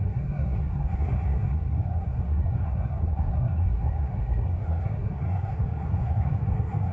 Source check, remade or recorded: remade